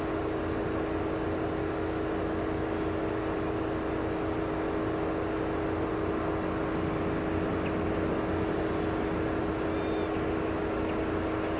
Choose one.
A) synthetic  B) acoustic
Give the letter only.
B